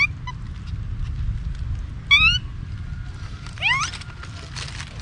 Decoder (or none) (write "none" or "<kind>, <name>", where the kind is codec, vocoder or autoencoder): none